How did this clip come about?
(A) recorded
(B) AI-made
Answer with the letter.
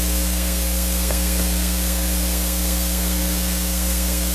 B